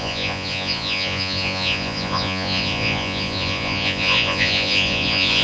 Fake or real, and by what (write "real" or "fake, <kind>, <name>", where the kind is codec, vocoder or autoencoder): fake, vocoder, Vocos